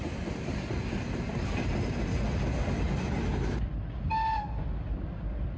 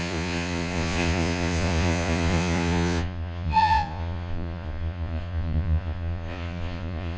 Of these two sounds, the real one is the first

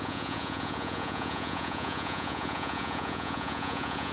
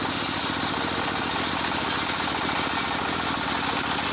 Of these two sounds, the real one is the second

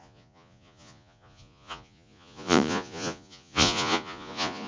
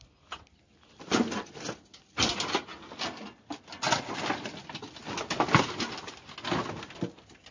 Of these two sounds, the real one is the second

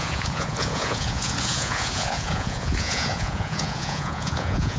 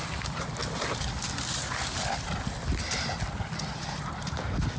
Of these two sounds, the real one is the second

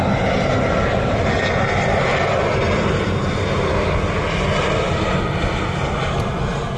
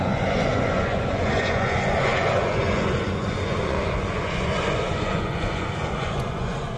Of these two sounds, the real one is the first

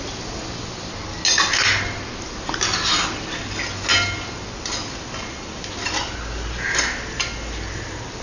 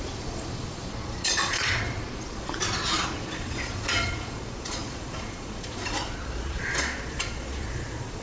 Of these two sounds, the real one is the first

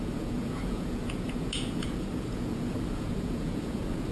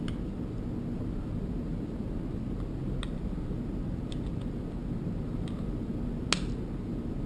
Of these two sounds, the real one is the second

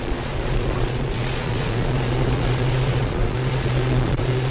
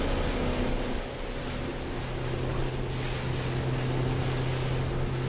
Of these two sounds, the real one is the second